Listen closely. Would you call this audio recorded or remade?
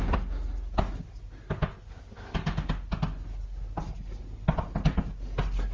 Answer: recorded